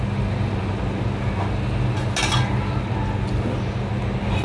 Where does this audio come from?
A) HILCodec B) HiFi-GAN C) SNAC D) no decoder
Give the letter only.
D